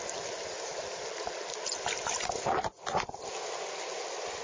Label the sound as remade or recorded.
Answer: recorded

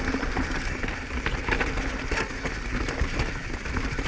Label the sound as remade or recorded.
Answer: recorded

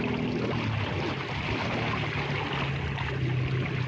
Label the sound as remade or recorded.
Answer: recorded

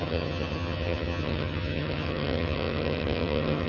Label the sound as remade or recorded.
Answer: remade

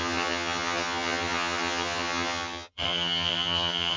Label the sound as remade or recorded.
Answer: remade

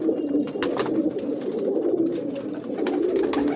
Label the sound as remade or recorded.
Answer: recorded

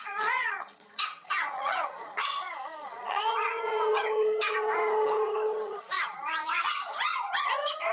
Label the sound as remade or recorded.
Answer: remade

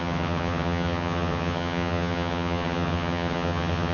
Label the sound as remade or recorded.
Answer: remade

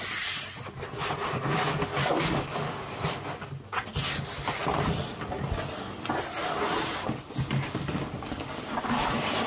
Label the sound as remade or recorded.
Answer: recorded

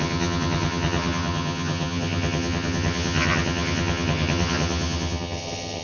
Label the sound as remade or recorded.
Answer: remade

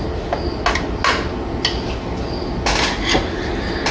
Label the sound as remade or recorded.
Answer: recorded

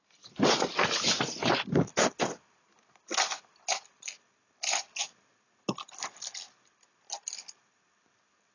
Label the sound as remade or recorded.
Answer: recorded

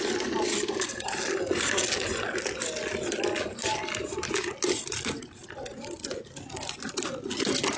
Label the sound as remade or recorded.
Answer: recorded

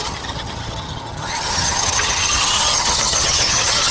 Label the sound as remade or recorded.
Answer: remade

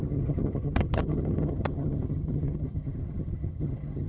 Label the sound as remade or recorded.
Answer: remade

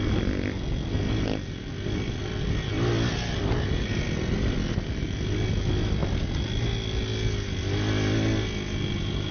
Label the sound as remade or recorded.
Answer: recorded